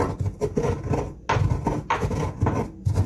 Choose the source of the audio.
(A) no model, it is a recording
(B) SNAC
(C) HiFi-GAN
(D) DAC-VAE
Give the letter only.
A